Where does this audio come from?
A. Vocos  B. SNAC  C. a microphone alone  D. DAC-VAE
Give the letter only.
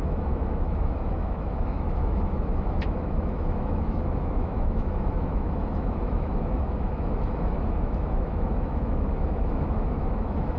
D